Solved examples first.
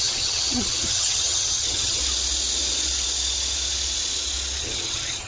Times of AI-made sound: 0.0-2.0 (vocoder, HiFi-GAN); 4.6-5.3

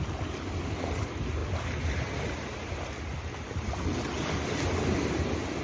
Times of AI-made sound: none

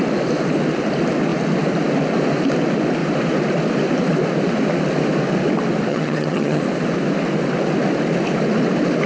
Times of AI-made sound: 5.9-6.6 (vocoder, HiFi-GAN)